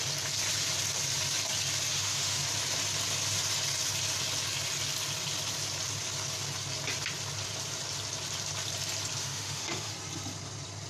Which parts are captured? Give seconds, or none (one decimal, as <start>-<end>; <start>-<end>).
0.0-1.9; 2.4-9.2; 9.9-10.9